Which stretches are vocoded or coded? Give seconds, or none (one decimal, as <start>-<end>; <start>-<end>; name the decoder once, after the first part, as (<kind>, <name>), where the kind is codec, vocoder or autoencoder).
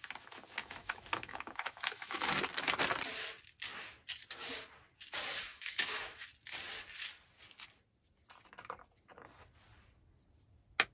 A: 0.6-2.3 (autoencoder, DAC-VAE); 5.5-6.3